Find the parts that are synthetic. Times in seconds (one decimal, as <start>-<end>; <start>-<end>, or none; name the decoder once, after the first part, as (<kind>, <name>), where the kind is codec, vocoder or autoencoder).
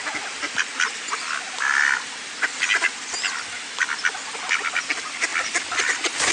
none